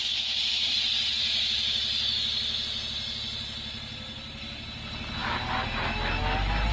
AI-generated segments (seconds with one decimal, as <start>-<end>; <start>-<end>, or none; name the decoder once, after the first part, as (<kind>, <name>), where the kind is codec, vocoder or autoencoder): none